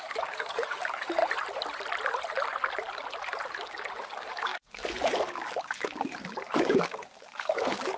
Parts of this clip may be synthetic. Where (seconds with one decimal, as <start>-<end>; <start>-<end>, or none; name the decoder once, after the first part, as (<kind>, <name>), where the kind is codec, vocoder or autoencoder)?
0.0-1.2 (codec, DAC); 4.0-8.0